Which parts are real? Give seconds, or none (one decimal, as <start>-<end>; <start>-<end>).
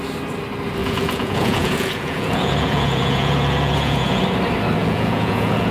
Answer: 0.0-0.8; 4.2-4.8